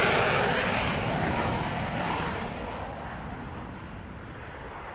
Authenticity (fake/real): real